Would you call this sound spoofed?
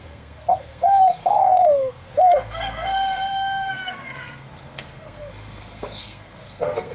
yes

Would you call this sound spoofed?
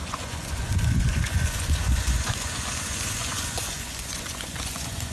yes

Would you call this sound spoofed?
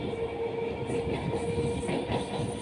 no